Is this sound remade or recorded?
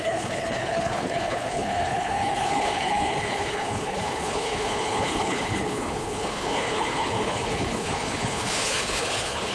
remade